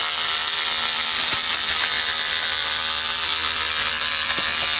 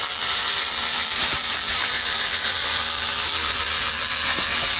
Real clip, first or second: first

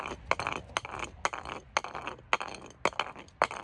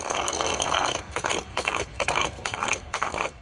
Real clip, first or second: first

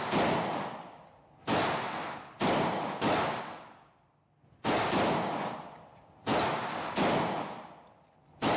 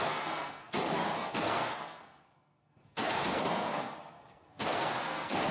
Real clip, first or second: first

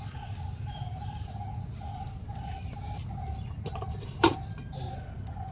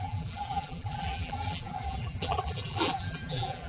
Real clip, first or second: first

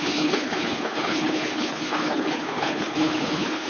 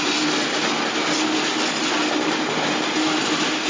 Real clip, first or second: second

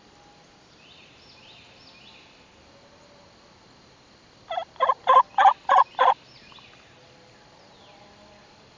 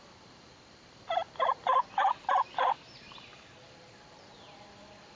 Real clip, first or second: first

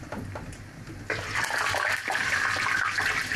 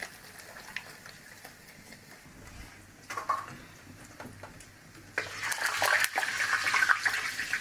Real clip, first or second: second